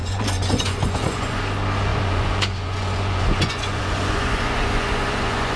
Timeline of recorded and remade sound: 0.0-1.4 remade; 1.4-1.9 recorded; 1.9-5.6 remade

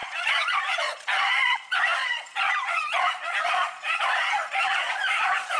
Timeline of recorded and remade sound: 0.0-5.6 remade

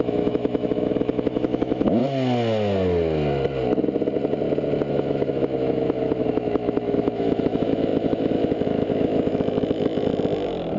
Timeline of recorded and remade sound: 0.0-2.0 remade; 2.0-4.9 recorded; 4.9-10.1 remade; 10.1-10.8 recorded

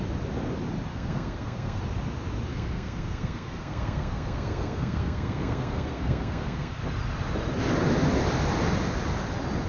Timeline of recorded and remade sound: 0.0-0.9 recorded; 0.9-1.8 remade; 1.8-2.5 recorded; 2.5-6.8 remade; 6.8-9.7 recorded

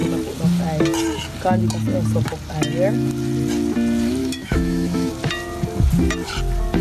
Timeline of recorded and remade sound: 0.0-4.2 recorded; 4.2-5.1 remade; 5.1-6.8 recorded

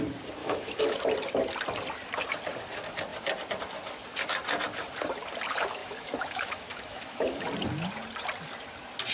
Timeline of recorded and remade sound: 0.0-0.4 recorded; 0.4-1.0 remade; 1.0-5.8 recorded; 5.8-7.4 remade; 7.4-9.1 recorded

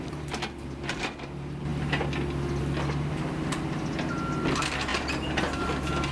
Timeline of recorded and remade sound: 0.0-6.1 recorded

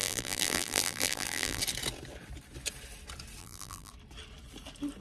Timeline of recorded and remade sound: 0.0-1.6 remade; 1.6-3.4 recorded; 3.4-3.9 remade; 3.9-5.0 recorded